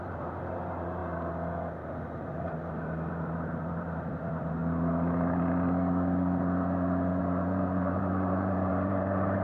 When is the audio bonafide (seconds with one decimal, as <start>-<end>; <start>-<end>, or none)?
1.0-3.1; 4.6-7.2